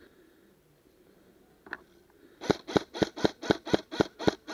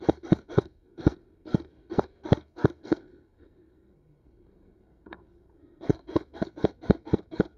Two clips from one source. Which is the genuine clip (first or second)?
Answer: first